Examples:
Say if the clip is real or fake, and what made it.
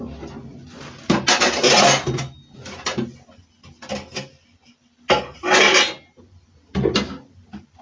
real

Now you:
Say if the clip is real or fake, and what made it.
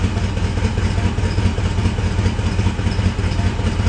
real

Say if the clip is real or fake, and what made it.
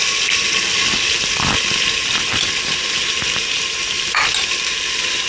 real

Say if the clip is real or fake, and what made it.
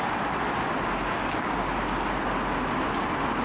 real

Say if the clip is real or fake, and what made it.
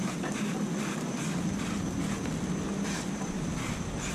real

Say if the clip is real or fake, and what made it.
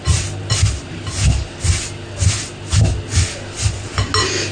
real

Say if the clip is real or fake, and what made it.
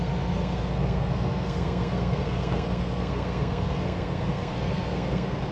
fake, codec, SNAC